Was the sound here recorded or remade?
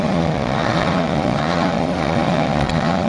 remade